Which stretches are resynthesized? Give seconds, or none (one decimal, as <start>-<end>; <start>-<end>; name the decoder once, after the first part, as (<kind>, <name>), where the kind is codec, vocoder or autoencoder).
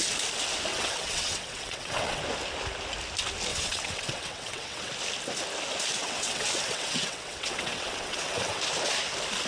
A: 0.7-2.2 (vocoder, WaveNeXt); 3.5-4.9; 6.0-8.6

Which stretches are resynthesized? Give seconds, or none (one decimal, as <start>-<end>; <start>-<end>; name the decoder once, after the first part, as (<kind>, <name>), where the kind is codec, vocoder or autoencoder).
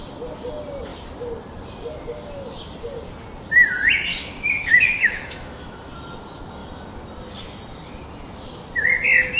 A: 4.1-5.9 (autoencoder, DAC-VAE)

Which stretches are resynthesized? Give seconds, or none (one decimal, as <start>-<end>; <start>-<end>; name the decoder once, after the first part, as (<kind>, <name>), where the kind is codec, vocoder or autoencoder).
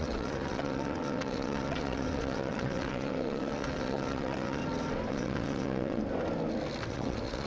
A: 0.0-4.6 (vocoder, WaveNeXt); 5.1-6.0; 6.9-7.5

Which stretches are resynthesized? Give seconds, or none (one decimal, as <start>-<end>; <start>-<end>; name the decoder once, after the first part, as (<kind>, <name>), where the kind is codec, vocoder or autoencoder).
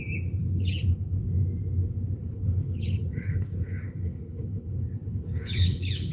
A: 0.4-1.2 (codec, HILCodec); 2.2-6.1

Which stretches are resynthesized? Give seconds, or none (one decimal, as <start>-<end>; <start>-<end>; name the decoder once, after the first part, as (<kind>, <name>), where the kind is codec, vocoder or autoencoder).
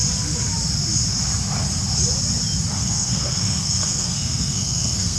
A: 2.7-5.2 (codec, SNAC)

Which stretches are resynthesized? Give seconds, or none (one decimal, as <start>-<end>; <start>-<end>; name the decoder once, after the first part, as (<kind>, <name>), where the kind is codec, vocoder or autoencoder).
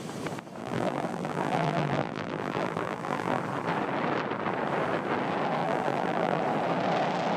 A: 0.6-3.4 (vocoder, BigVGAN v2); 5.6-6.4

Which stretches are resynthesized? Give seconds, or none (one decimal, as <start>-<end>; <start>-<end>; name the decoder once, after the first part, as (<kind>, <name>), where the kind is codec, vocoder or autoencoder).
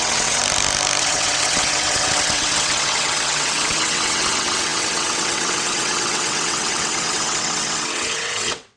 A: 0.0-0.4 (vocoder, WaveNeXt); 1.0-8.8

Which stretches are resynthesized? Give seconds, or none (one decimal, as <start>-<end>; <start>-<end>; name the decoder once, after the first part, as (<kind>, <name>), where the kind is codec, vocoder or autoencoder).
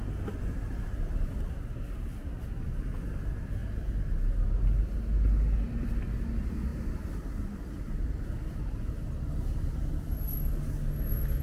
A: none